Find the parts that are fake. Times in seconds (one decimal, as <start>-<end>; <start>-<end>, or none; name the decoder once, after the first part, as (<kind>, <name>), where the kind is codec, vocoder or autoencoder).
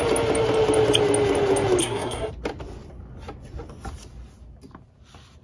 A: 1.8-2.3 (codec, SNAC)